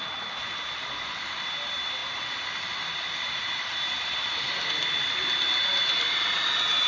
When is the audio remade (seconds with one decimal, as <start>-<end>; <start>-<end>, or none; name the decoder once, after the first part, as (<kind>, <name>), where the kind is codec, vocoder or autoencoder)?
none